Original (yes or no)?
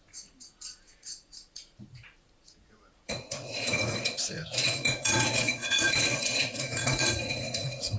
no